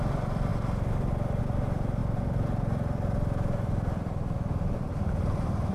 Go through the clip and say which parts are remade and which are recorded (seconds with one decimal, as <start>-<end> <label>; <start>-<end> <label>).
0.0-5.7 recorded